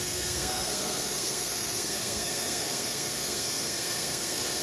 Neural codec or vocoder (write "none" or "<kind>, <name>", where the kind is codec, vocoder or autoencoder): codec, SNAC